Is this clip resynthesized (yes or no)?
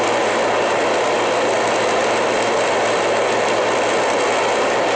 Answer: no